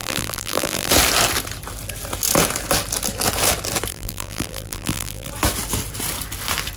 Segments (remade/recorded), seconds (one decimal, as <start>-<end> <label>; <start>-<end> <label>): 0.0-0.9 remade; 0.9-3.9 recorded; 3.9-5.3 remade; 5.3-6.8 recorded